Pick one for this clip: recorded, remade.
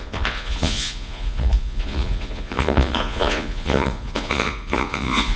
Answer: remade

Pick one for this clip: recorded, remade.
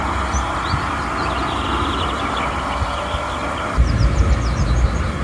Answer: recorded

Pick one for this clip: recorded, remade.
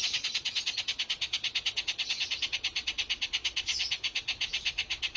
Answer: remade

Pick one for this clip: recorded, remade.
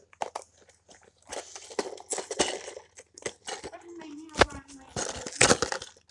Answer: recorded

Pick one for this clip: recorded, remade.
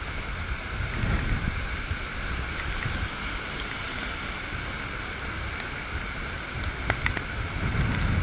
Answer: recorded